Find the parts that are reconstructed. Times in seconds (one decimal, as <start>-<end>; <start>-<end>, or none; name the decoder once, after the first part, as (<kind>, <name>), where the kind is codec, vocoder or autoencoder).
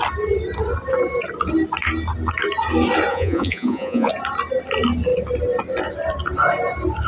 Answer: 3.1-4.1 (vocoder, Vocos)